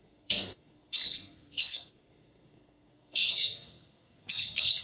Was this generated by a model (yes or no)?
yes